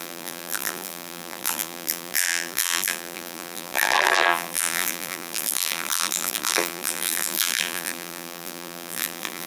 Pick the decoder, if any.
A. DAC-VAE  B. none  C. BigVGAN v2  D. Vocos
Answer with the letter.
C